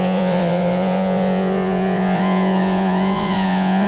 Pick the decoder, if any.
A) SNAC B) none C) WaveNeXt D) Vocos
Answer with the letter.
D